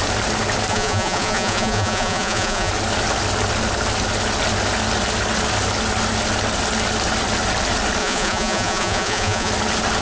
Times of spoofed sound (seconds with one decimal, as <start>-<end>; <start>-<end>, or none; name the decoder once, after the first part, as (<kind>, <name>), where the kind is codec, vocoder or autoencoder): 0.7-2.7 (vocoder, Vocos); 8.0-9.5

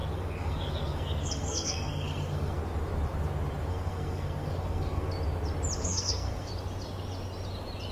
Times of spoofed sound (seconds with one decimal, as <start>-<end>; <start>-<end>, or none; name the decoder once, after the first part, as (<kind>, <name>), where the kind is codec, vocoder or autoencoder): 0.0-2.6 (codec, SNAC); 3.7-5.1; 5.8-6.5